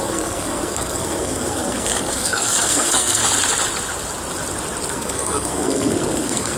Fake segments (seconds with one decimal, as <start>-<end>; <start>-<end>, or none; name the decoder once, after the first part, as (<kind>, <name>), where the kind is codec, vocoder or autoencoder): 0.0-3.2 (codec, SNAC); 4.9-6.6